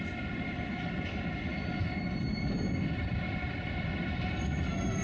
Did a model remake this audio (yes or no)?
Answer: yes